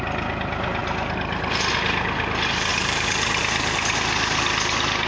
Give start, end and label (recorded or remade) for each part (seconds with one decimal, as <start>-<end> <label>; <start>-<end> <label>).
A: 0.0-2.7 recorded; 2.7-3.4 remade; 3.4-5.1 recorded